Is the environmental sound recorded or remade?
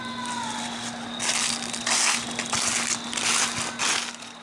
recorded